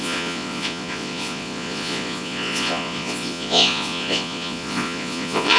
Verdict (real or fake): fake